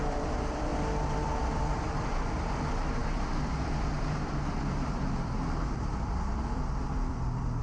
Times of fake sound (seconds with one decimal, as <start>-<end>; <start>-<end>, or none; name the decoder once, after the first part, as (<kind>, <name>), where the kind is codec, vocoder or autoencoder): 0.0-0.7 (vocoder, BigVGAN v2); 1.6-7.6